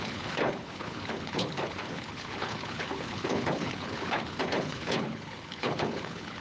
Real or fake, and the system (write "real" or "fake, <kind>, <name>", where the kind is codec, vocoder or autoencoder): fake, codec, HILCodec